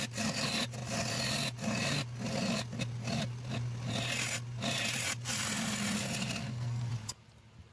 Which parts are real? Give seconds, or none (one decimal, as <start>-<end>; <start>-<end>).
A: 0.0-6.4; 6.9-7.7